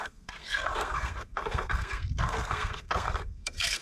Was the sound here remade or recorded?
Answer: remade